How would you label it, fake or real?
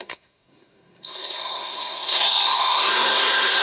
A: fake